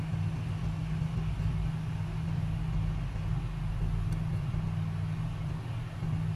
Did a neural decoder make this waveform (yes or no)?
no